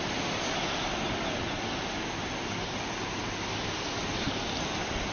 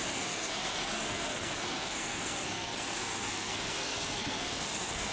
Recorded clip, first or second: first